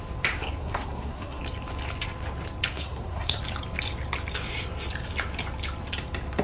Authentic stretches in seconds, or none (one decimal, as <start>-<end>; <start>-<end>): 0.0-0.6; 1.4-2.7; 3.4-6.4